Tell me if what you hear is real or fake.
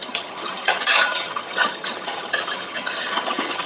fake